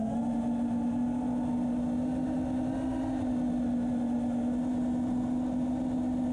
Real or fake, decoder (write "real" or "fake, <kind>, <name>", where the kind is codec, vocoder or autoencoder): real